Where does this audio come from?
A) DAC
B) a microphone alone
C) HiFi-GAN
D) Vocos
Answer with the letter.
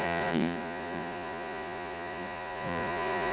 D